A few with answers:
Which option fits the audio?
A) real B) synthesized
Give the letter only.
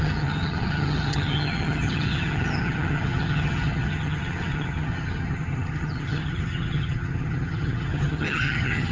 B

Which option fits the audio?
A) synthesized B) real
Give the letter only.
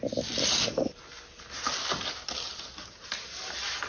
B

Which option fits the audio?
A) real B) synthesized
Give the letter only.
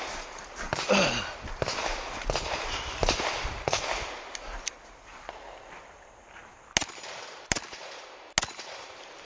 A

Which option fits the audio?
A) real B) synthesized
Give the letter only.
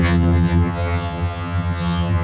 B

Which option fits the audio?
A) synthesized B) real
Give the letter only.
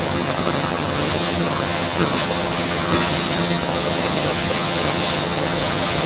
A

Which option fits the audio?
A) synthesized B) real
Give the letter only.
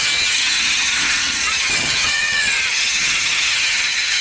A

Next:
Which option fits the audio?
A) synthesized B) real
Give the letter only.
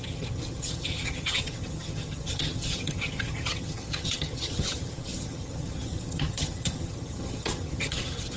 A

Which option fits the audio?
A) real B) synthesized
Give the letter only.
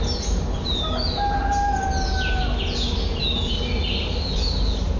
A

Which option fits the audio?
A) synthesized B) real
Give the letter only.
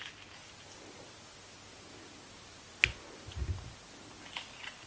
B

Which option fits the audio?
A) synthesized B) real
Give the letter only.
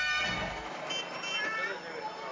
B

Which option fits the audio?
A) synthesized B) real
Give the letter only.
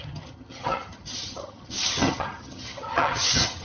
A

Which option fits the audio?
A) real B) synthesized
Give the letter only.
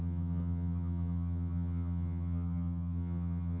B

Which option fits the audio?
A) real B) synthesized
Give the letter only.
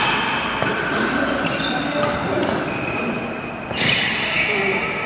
A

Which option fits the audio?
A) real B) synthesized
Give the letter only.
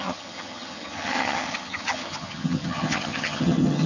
B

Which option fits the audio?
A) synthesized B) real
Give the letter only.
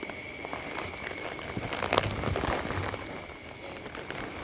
B